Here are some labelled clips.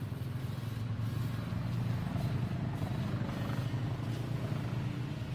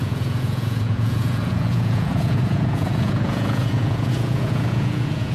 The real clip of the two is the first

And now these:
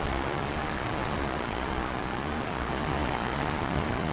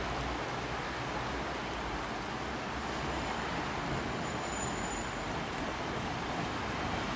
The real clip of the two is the second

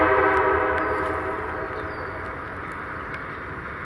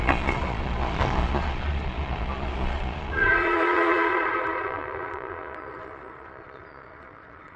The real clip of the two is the first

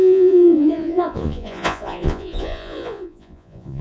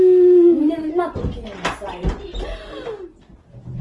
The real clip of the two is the second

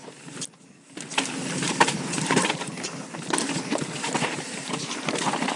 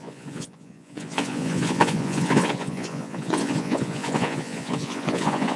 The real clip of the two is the first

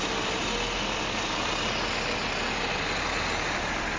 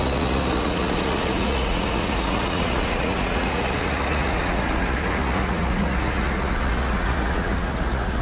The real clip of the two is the first